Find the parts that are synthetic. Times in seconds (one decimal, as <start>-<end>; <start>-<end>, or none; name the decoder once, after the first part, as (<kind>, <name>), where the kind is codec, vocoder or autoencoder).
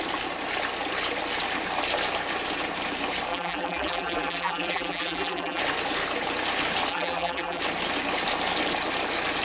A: 3.3-5.6 (vocoder, BigVGAN v2); 6.9-7.6